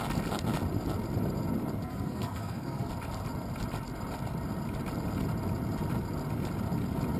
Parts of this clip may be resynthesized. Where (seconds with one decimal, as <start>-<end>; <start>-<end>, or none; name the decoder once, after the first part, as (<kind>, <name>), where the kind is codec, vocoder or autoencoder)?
1.8-2.9 (codec, SNAC)